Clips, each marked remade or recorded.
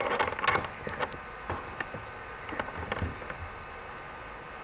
recorded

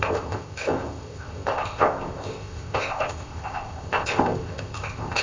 remade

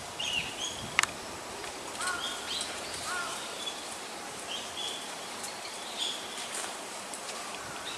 remade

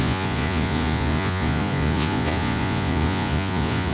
remade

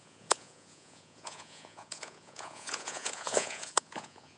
remade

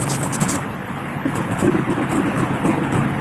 remade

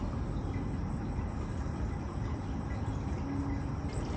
recorded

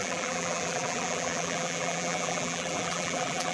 remade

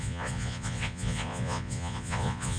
remade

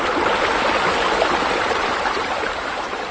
remade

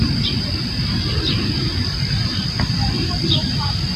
recorded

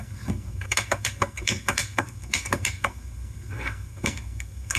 remade